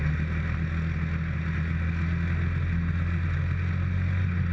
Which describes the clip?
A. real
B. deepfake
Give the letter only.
A